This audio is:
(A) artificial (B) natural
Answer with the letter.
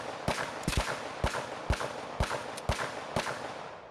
B